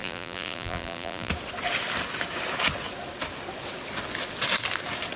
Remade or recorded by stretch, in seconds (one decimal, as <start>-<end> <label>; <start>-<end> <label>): 0.0-1.3 remade; 1.3-5.2 recorded

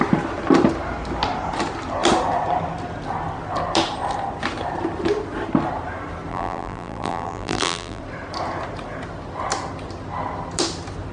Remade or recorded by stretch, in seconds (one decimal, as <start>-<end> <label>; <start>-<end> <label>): 0.0-6.3 recorded; 6.3-8.0 remade; 8.0-11.1 recorded

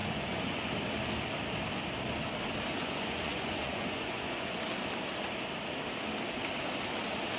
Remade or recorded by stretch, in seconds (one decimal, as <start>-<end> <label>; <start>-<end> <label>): 0.0-0.7 remade; 0.7-2.7 recorded; 2.7-4.6 remade; 4.6-7.4 recorded

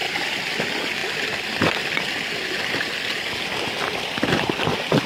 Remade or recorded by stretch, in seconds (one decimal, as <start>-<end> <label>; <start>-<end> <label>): 0.0-5.1 recorded

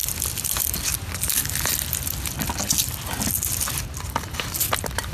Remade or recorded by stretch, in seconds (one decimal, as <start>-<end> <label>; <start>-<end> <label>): 0.0-5.1 recorded

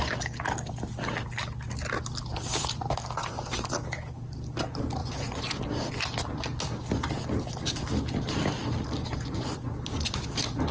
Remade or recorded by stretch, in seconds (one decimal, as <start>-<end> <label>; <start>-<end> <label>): 0.0-3.2 recorded; 3.2-3.7 remade; 3.7-5.0 recorded; 5.0-5.6 remade; 5.6-9.0 recorded; 9.0-9.7 remade; 9.7-10.7 recorded

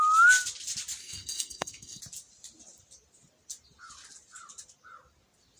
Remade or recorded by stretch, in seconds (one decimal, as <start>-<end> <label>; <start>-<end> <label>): 0.0-1.0 recorded; 1.0-2.0 remade; 2.0-5.6 recorded